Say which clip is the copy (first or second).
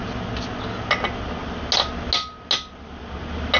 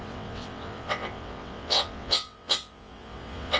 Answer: second